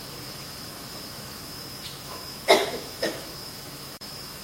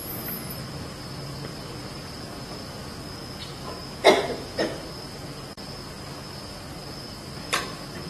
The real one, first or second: second